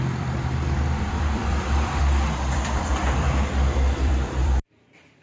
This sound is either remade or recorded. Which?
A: remade